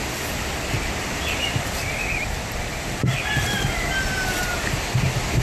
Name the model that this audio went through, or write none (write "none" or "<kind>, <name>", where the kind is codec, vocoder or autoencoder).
none